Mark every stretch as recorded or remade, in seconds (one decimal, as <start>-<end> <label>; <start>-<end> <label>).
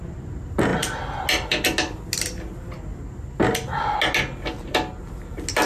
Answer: 0.0-5.7 recorded